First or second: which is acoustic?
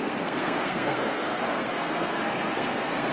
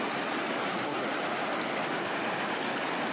second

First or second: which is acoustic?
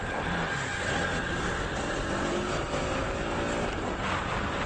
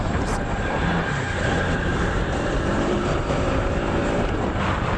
first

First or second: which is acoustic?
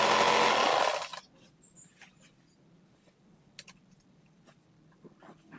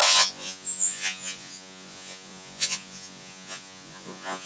first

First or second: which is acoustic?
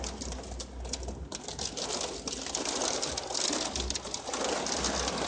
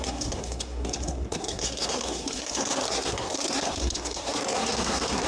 first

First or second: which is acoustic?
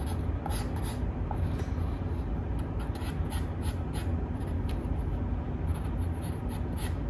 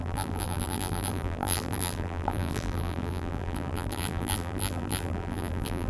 first